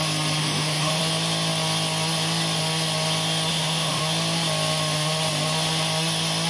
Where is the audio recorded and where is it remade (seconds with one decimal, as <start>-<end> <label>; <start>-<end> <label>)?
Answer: 0.0-0.4 recorded; 0.4-1.0 remade; 1.0-3.5 recorded; 3.5-4.0 remade; 4.0-6.5 recorded